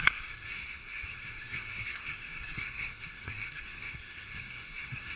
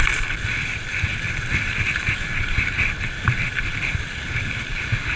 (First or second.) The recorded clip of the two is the second